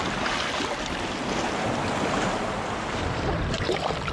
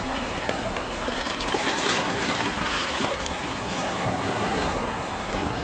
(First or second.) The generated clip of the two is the second